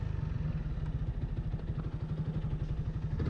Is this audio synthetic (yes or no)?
no